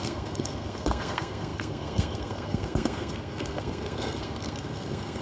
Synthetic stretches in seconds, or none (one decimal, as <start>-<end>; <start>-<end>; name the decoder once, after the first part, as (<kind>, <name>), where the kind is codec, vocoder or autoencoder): 0.0-5.2 (codec, SNAC)